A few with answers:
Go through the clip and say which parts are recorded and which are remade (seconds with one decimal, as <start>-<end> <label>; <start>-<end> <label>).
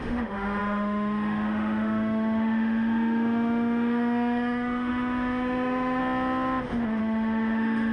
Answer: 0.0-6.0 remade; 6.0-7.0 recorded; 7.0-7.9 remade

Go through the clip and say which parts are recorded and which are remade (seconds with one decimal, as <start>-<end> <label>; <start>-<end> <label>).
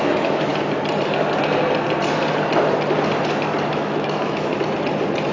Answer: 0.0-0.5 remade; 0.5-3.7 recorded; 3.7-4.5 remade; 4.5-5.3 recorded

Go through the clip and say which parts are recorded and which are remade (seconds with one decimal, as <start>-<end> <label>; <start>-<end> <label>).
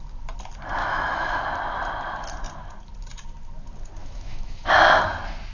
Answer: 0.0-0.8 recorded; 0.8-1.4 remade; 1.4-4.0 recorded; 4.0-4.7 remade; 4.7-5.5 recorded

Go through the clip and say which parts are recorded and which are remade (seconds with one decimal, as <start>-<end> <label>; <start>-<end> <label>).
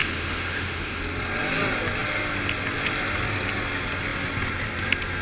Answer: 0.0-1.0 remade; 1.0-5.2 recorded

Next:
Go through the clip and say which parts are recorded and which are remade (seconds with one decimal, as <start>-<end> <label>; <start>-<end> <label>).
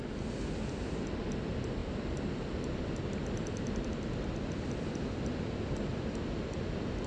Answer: 0.0-7.1 recorded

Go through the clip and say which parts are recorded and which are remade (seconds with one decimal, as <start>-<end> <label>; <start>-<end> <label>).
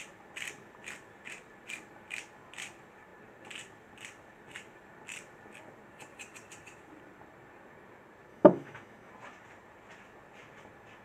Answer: 0.0-8.3 recorded; 8.3-9.1 remade; 9.1-11.0 recorded